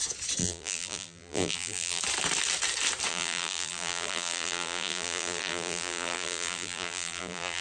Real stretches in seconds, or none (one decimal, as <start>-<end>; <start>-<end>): 0.0-0.4; 2.0-3.1